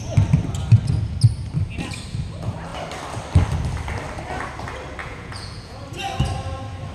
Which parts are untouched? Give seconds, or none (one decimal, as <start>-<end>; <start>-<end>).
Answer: 0.0-5.0; 5.8-6.9